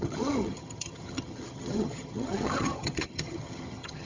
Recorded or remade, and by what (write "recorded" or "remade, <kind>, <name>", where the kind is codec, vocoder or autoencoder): remade, vocoder, HiFi-GAN